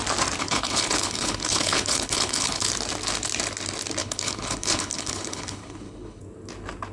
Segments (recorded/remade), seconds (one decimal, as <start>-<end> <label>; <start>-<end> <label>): 0.0-0.4 recorded; 0.4-2.7 remade; 2.7-4.0 recorded; 4.0-6.2 remade; 6.2-6.9 recorded